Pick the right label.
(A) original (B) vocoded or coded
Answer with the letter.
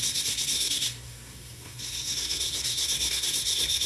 B